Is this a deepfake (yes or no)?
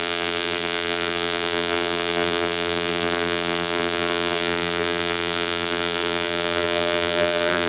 yes